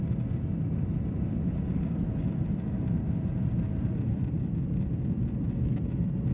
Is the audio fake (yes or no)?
no